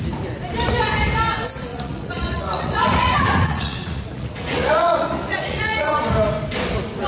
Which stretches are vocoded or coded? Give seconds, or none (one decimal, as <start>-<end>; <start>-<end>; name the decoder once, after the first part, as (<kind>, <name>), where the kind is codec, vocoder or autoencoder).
1.7-6.0 (vocoder, Vocos)